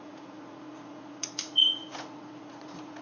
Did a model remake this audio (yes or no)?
yes